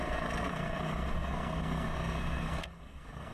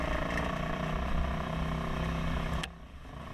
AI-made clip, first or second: first